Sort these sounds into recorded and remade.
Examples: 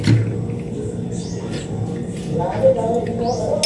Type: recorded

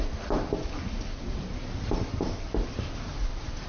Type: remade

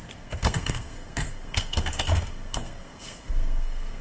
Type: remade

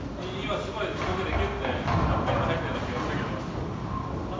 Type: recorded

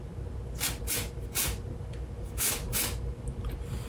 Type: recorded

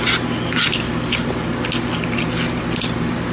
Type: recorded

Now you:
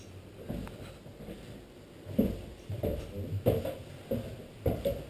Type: recorded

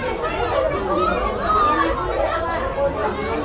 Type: recorded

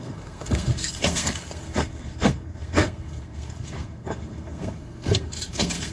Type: remade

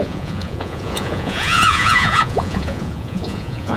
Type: remade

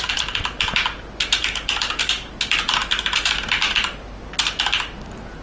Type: recorded